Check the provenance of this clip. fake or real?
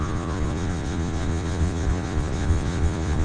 fake